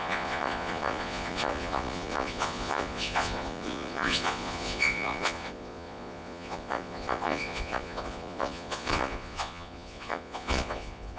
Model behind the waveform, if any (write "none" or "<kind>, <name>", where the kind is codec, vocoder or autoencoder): vocoder, Vocos